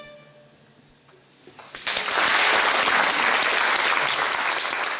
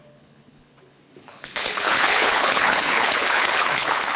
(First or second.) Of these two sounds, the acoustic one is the first